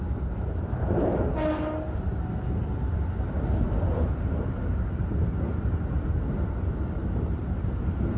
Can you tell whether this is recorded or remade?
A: recorded